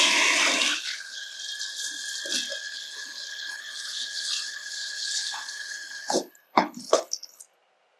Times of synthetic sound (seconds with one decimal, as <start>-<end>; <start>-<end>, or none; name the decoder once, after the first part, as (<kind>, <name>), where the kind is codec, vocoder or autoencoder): 0.7-1.4 (codec, HILCodec); 2.6-7.4